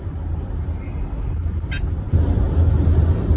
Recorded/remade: recorded